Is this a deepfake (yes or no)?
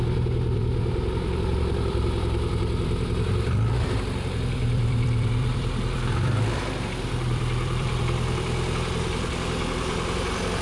yes